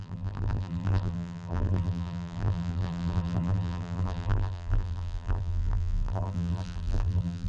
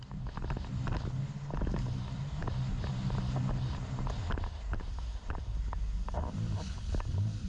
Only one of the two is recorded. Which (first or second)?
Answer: second